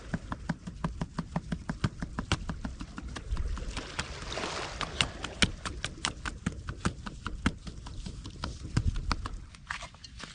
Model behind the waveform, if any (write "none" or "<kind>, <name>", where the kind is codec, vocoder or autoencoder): none